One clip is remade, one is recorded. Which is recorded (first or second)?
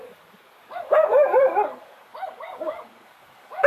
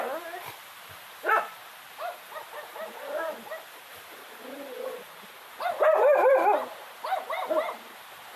second